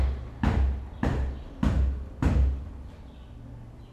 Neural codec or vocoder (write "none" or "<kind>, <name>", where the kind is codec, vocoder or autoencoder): none